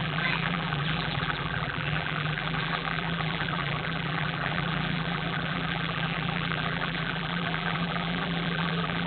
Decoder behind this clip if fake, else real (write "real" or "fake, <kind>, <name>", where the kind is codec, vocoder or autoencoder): fake, vocoder, BigVGAN v2